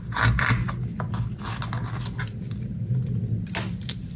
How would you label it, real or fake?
real